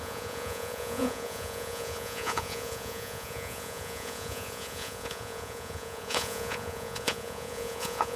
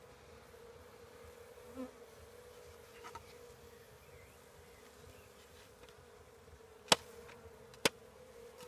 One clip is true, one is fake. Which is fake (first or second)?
first